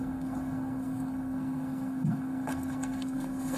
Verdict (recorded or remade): remade